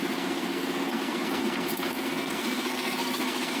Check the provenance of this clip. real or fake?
fake